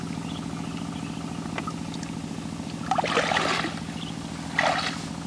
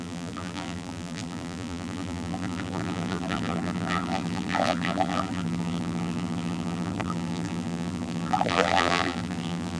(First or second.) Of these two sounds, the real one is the first